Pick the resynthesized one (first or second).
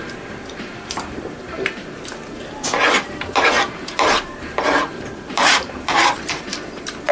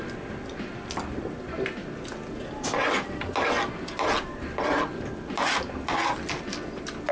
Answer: first